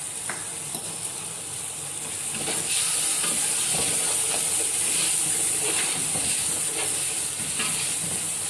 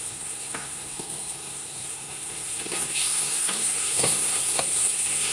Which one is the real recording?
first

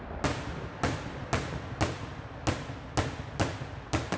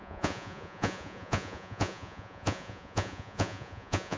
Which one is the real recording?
first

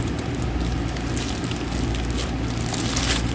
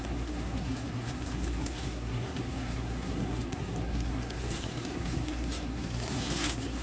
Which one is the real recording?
first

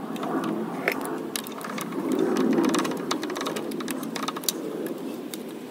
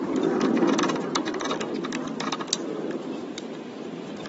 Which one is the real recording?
first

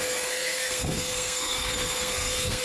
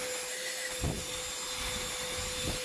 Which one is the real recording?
second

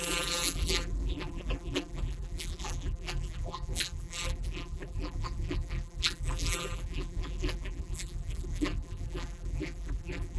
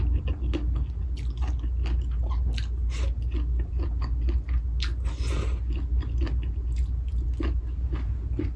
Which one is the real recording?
second